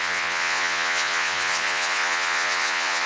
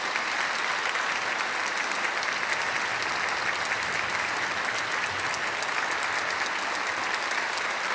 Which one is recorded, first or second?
second